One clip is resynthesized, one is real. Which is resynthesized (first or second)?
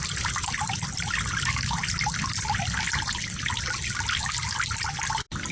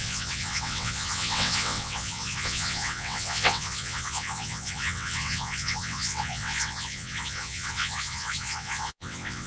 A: second